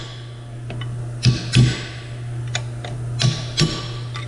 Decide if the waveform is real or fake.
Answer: real